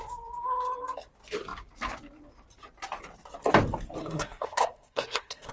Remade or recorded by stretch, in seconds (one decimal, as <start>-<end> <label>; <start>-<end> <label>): 0.0-4.0 recorded; 4.0-5.5 remade